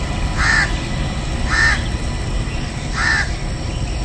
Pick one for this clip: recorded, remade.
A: recorded